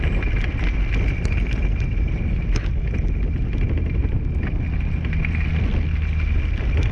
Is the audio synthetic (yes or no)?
no